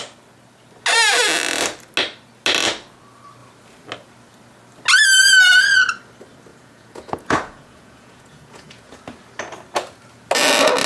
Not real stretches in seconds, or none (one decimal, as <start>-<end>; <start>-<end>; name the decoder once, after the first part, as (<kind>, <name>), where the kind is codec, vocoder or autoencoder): 6.5-9.0 (vocoder, Vocos)